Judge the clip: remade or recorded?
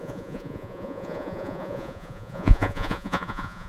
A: remade